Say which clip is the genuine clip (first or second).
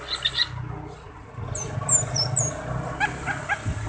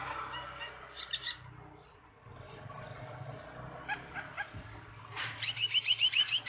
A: first